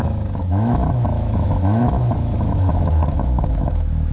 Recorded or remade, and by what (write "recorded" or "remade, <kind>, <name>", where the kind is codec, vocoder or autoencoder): remade, autoencoder, DAC-VAE